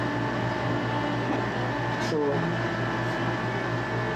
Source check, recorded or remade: recorded